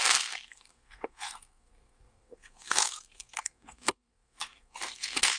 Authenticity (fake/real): fake